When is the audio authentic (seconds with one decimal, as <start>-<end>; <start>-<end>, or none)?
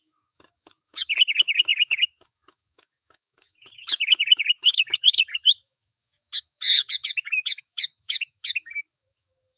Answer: none